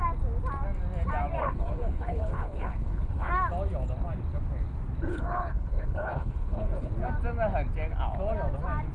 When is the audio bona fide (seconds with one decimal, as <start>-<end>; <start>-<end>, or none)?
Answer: 0.0-1.4; 3.3-5.1; 6.9-8.9